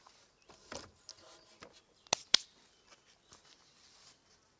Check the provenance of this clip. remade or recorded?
recorded